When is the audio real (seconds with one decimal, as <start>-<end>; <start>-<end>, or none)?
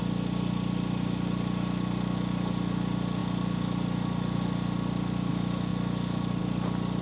0.0-7.0